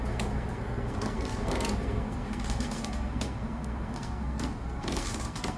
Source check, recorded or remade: remade